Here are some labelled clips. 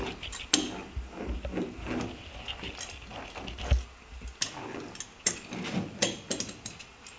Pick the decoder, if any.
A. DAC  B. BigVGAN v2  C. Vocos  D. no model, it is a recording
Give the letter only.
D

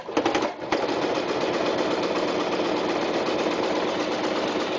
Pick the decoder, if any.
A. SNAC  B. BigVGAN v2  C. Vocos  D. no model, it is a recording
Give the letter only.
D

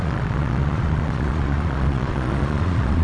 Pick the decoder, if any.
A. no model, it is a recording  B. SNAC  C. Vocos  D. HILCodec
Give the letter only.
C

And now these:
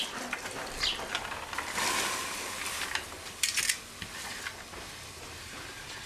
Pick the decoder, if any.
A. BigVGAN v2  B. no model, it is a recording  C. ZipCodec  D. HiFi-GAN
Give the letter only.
B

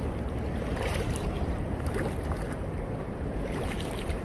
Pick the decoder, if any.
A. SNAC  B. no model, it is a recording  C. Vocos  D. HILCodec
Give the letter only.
B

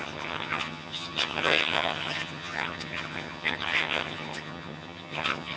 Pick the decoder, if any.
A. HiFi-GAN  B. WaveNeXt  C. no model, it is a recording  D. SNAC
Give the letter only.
A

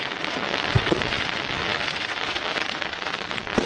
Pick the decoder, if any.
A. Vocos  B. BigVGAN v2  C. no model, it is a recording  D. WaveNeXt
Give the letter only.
D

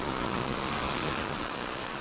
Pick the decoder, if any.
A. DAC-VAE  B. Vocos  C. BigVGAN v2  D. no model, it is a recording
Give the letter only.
B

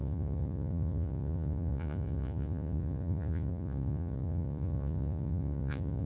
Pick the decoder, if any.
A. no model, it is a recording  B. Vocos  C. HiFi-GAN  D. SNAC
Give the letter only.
B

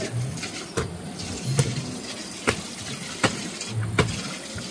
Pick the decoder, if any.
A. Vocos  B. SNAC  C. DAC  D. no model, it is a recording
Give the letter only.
D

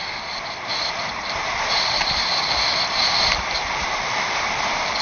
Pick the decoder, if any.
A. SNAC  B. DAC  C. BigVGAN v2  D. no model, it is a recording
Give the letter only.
C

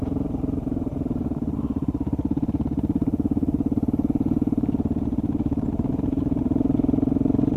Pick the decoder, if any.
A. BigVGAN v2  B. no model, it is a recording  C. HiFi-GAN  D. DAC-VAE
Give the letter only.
A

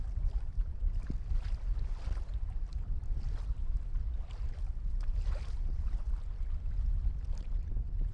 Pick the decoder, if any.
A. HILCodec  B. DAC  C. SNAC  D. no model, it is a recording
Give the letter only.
D